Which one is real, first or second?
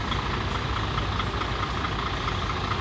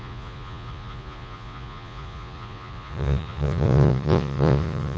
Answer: first